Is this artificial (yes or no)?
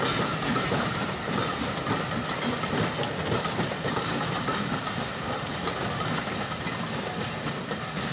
no